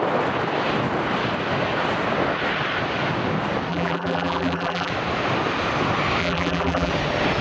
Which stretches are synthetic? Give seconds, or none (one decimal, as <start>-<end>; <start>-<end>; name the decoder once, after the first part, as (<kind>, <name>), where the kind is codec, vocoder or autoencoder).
3.7-4.9 (vocoder, BigVGAN v2); 6.2-6.9